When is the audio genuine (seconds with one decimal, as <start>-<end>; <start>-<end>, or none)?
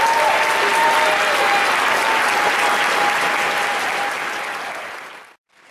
0.0-0.7; 1.3-5.7